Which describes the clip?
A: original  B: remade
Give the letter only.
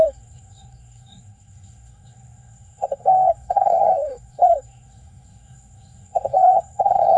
B